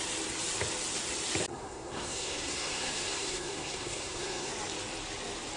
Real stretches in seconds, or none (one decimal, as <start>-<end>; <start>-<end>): 0.0-1.5; 4.5-5.6